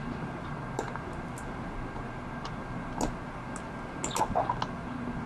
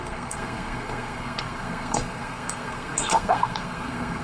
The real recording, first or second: first